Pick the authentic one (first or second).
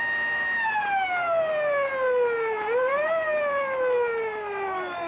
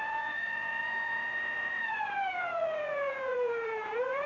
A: first